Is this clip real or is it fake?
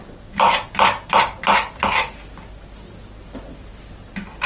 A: real